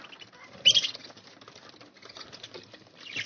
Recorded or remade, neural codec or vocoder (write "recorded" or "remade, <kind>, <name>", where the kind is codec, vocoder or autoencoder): recorded